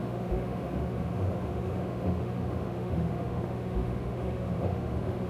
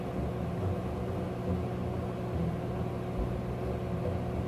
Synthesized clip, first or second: first